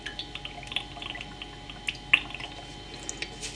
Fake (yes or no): no